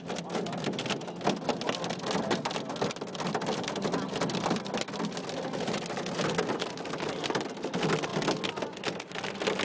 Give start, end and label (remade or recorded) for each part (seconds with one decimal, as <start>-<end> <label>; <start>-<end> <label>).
0.0-9.6 recorded